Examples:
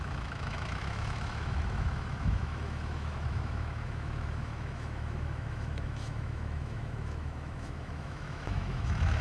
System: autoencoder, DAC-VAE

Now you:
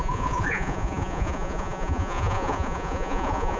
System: vocoder, Vocos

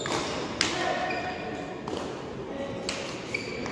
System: none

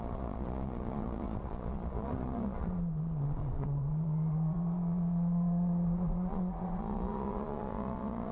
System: vocoder, Vocos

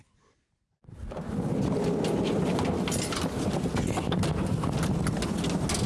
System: none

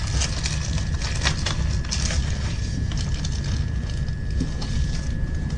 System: none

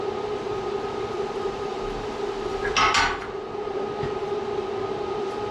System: vocoder, BigVGAN v2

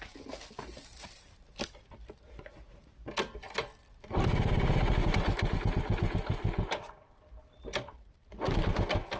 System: none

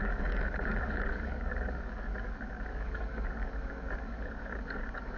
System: codec, DAC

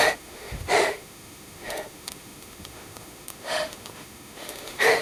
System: autoencoder, DAC-VAE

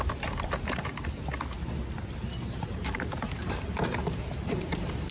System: vocoder, BigVGAN v2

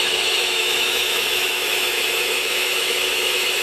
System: autoencoder, DAC-VAE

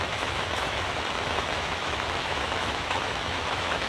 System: autoencoder, DAC-VAE